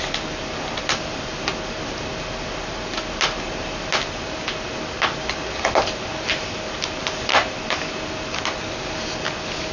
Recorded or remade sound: recorded